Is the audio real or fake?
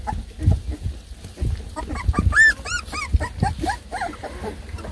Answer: real